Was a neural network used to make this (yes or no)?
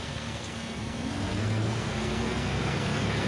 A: yes